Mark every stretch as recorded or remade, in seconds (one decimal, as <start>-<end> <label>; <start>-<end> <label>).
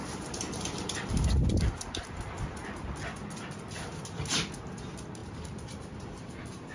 0.0-2.2 remade; 2.2-5.2 recorded; 5.2-6.3 remade; 6.3-6.7 recorded